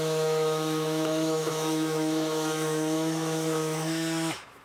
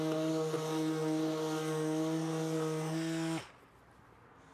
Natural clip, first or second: second